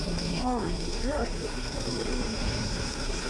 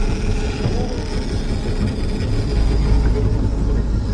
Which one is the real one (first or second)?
second